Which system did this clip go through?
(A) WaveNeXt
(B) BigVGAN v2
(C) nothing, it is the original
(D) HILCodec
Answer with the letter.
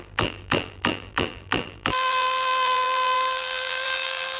B